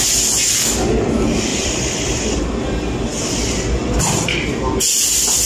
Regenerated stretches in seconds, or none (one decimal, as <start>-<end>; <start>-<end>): 1.5-2.4